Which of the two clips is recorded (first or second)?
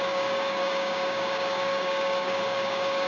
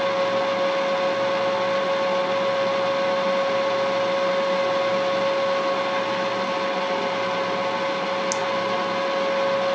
second